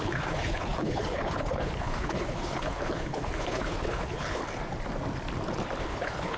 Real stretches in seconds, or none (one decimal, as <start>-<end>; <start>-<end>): 4.4-5.8